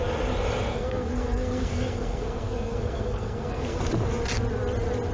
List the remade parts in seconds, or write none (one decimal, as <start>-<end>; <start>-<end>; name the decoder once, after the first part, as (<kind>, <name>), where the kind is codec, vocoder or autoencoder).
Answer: 0.7-3.8 (codec, SNAC)